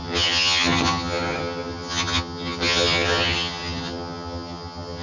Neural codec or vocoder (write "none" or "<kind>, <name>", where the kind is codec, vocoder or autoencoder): vocoder, HiFi-GAN